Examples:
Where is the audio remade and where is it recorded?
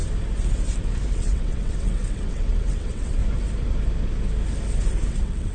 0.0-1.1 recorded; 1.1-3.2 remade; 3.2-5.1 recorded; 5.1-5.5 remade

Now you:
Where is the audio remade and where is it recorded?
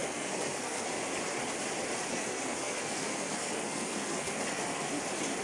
0.0-0.9 remade; 0.9-2.1 recorded; 2.1-4.9 remade; 4.9-5.4 recorded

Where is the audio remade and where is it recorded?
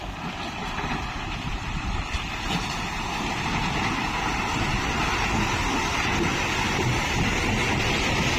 0.0-0.6 recorded; 0.6-1.1 remade; 1.1-1.5 recorded; 1.5-2.3 remade; 2.3-8.4 recorded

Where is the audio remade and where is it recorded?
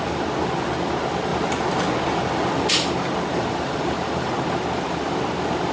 0.0-3.3 recorded; 3.3-4.3 remade; 4.3-5.7 recorded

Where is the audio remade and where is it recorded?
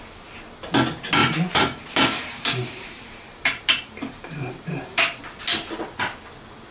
0.0-1.2 recorded; 1.2-5.2 remade; 5.2-6.7 recorded